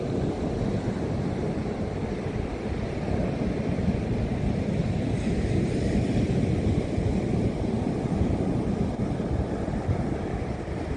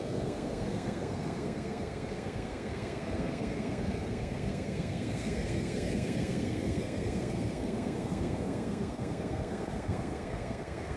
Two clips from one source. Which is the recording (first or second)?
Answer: first